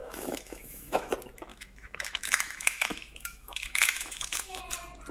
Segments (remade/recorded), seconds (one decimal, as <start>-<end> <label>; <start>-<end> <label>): 0.0-1.1 remade; 1.1-1.5 recorded; 1.5-4.6 remade; 4.6-5.1 recorded